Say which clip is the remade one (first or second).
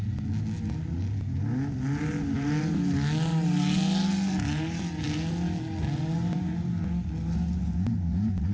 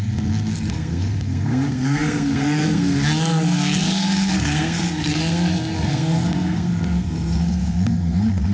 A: second